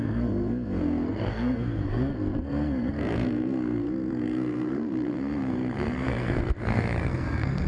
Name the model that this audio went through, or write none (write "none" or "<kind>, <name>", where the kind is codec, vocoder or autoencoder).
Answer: codec, SNAC